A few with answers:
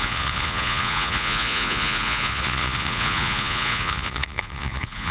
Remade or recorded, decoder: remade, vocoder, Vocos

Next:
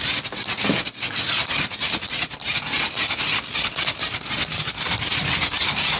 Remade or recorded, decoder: recorded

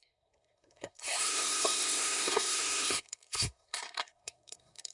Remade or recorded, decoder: remade, codec, SNAC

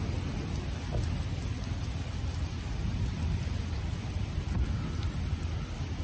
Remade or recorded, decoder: recorded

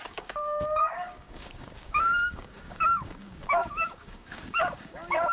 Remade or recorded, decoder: remade, codec, DAC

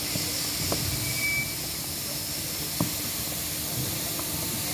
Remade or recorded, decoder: recorded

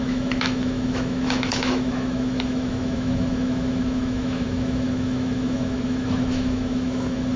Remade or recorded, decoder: remade, autoencoder, DAC-VAE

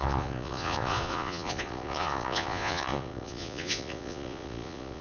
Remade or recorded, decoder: remade, vocoder, Vocos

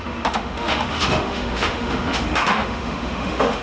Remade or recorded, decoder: remade, autoencoder, DAC-VAE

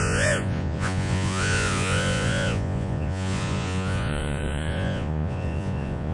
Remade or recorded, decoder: remade, vocoder, Vocos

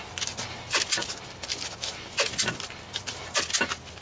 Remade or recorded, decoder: recorded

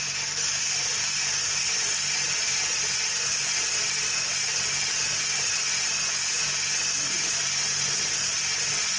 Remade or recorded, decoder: recorded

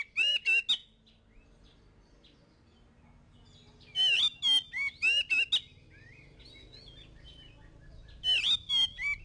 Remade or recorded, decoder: recorded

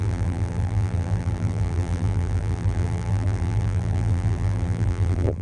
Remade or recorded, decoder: remade, vocoder, BigVGAN v2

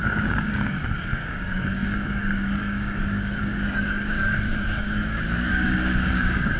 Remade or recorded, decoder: remade, codec, DAC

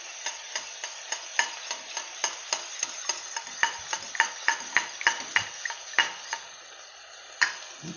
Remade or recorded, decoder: recorded